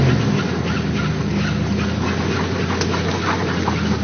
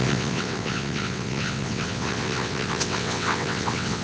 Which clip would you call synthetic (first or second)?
second